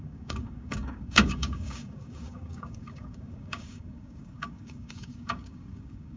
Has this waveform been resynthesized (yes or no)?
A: yes